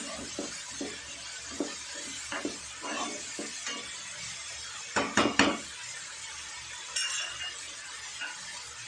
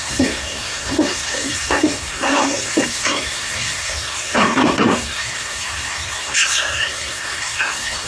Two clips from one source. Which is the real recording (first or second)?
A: first